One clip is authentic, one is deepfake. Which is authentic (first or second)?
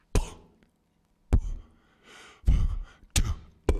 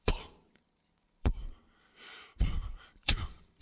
first